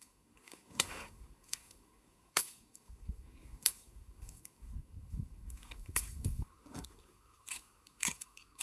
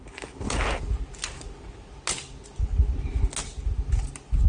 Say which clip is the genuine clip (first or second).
second